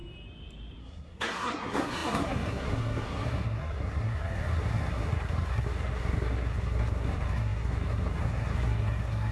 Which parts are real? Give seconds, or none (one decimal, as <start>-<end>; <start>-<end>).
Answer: 0.0-0.8